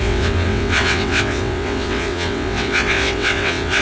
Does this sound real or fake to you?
fake